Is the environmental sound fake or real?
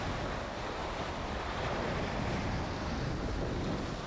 real